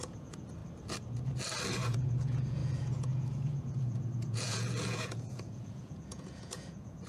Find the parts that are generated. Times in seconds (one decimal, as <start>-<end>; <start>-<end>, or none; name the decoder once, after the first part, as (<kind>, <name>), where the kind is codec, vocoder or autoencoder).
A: 0.0-0.6 (vocoder, Vocos); 1.7-7.1